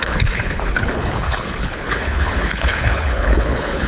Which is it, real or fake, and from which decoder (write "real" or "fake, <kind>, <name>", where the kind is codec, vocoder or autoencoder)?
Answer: fake, codec, HILCodec